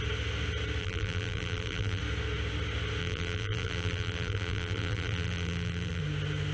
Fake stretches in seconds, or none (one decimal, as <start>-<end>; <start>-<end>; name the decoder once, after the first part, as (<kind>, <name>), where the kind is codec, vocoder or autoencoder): 0.8-2.0 (vocoder, BigVGAN v2); 3.0-6.0